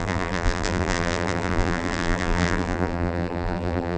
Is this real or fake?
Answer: fake